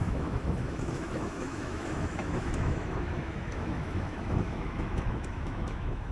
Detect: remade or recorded remade